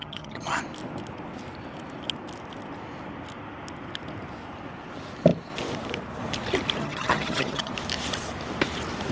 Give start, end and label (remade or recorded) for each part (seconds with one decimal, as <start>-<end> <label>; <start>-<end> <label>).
0.0-0.6 remade; 0.6-6.8 recorded; 6.8-7.7 remade; 7.7-9.1 recorded